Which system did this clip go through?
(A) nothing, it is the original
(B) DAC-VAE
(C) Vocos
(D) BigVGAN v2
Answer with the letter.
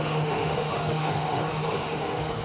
B